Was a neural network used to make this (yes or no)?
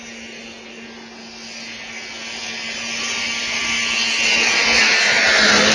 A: no